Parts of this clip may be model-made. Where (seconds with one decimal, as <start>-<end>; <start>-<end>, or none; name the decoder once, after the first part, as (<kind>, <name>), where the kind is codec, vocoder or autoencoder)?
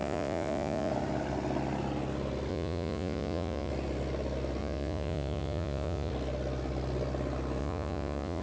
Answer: 0.0-0.9 (vocoder, Vocos); 2.5-3.7; 4.6-6.1; 7.6-8.4